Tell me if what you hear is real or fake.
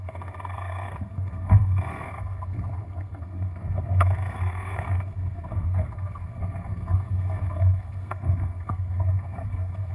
fake